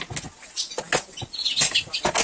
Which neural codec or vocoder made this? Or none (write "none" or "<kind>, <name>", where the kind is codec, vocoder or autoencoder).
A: none